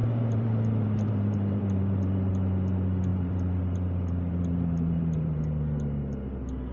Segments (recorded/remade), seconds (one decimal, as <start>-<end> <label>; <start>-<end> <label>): 0.0-2.3 remade; 2.3-3.1 recorded; 3.1-5.4 remade; 5.4-6.7 recorded